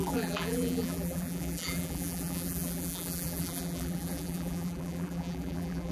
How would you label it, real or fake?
fake